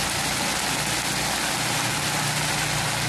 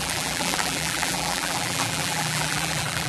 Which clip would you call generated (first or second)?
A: second